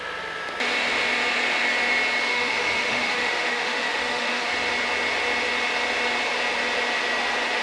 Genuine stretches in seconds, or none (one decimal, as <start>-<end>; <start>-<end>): 0.0-2.3; 4.5-7.6